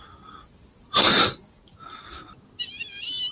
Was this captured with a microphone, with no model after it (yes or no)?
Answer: yes